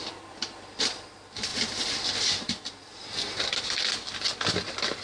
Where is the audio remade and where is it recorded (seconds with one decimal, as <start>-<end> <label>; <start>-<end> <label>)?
0.0-5.0 recorded